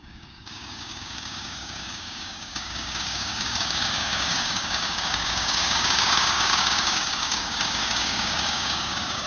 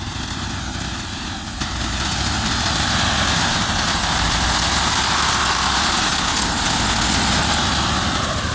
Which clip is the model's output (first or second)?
first